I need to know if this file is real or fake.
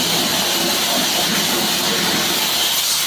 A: real